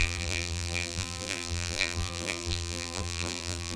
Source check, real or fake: fake